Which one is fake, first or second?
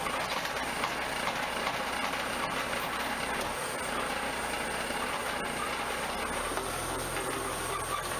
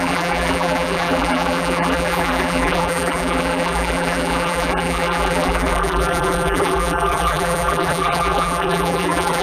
second